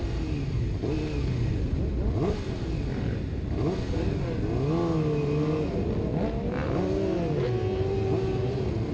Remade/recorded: recorded